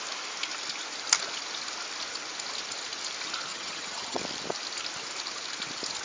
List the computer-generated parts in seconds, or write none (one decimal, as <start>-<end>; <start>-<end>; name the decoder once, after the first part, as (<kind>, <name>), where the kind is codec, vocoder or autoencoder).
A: 3.5-4.2 (vocoder, HiFi-GAN)